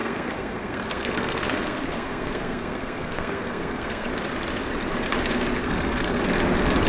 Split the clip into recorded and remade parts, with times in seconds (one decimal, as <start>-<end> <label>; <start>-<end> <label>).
0.0-4.1 remade; 4.1-5.6 recorded; 5.6-6.2 remade; 6.2-6.9 recorded